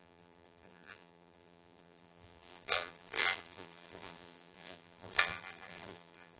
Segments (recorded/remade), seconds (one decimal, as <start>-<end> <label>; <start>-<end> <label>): 0.0-6.4 remade